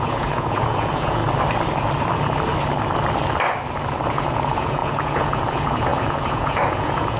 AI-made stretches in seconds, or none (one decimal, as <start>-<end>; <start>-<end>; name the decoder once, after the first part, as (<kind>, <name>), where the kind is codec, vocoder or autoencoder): 0.0-1.2 (vocoder, Vocos); 4.1-7.2